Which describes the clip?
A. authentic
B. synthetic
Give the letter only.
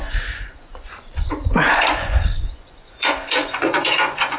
B